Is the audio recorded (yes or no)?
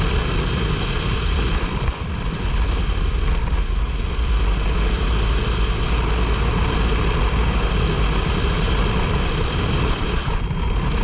yes